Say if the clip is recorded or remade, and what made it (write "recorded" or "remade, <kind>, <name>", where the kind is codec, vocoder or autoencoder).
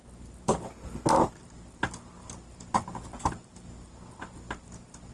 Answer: recorded